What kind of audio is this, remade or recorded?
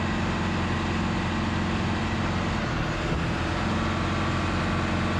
recorded